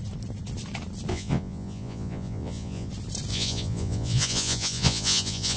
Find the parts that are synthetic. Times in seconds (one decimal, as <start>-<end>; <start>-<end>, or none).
1.1-2.9; 3.3-5.6